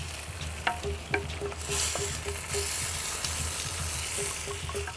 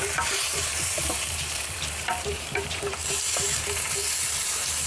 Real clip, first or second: first